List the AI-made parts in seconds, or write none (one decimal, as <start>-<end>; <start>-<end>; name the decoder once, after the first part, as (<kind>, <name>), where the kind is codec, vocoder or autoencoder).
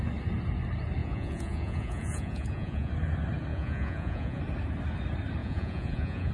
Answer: 1.0-2.9 (vocoder, Vocos); 3.5-4.4; 5.4-6.3